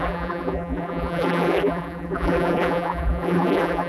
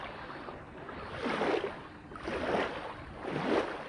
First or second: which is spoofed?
first